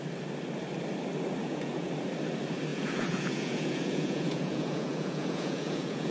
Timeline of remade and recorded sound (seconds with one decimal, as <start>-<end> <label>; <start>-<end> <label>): 0.0-1.4 recorded; 1.4-1.9 remade; 1.9-2.7 recorded; 2.7-6.1 remade